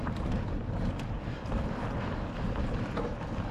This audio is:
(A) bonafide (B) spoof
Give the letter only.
A